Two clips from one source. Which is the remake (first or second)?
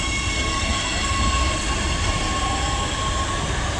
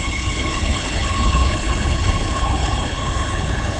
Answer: second